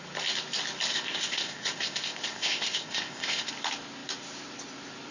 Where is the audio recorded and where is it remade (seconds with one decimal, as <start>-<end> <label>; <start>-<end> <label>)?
0.0-0.9 recorded; 0.9-3.5 remade; 3.5-5.1 recorded